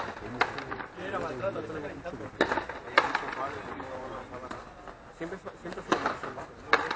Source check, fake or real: real